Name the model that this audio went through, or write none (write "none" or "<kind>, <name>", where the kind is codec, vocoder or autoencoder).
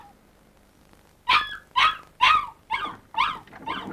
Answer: none